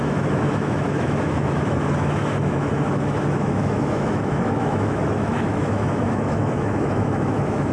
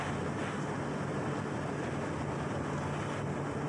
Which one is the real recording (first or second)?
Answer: second